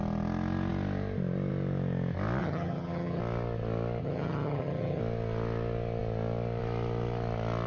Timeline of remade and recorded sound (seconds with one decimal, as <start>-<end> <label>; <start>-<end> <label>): 0.0-2.4 recorded; 2.4-3.2 remade; 3.2-4.0 recorded; 4.0-5.0 remade; 5.0-7.7 recorded